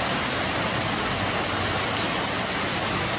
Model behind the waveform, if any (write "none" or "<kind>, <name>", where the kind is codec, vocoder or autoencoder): none